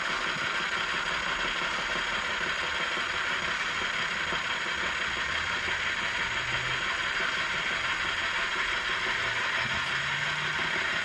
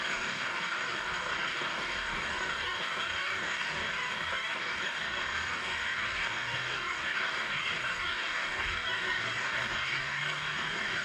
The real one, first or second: first